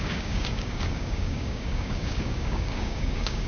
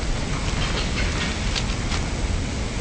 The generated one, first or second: first